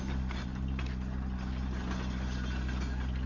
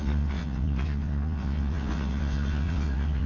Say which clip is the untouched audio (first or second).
first